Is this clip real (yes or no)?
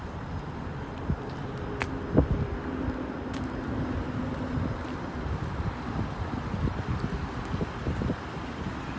yes